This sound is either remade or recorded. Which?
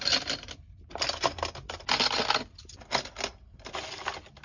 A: recorded